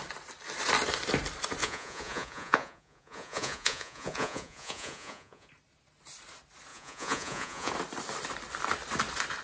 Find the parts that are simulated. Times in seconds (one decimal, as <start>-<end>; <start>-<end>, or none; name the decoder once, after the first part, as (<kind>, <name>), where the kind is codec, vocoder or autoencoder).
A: 1.6-5.5 (vocoder, Vocos); 6.7-7.7